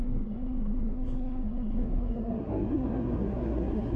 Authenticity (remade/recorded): remade